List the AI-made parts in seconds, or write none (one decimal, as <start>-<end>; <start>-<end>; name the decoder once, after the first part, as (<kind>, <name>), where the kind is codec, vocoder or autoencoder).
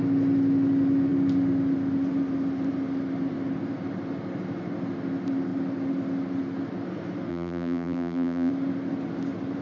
7.3-8.5 (vocoder, BigVGAN v2)